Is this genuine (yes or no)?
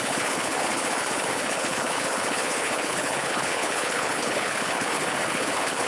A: no